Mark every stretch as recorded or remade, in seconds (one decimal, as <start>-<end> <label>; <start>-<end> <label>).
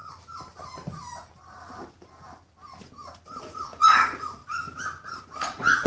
0.0-3.4 recorded; 3.4-4.4 remade; 4.4-5.2 recorded; 5.2-5.9 remade